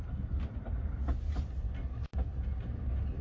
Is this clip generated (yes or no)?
no